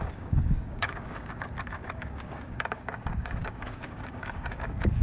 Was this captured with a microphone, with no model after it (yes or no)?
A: no